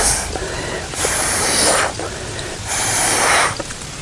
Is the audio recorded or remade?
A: remade